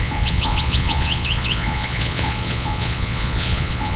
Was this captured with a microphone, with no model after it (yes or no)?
no